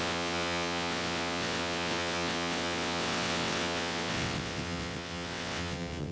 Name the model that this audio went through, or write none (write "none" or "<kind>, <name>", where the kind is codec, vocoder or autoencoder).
vocoder, WaveNeXt